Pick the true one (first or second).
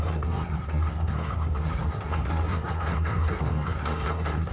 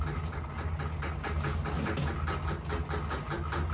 second